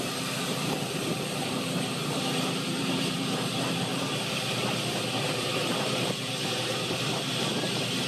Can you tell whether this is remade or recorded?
remade